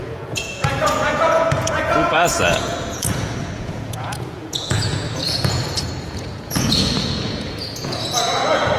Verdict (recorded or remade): remade